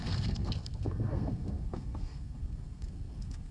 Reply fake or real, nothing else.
fake